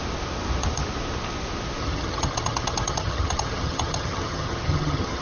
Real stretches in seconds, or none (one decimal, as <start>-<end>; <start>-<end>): 0.0-1.8